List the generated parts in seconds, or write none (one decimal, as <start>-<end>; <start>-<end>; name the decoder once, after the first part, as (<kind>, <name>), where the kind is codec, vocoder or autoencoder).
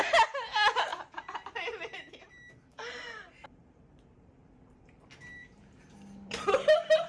0.9-4.8 (vocoder, BigVGAN v2); 5.4-7.1